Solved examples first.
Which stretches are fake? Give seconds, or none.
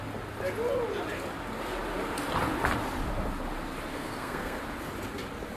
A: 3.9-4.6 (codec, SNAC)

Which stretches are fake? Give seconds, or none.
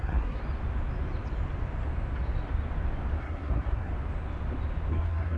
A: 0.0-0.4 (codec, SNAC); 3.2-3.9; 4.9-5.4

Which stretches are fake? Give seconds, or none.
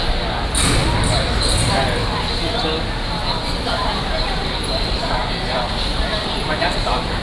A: 5.2-7.2 (vocoder, BigVGAN v2)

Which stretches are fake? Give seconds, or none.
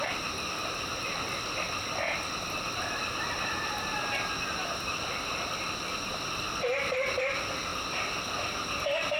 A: none